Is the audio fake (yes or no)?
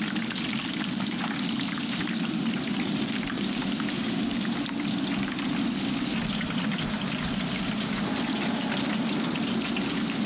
no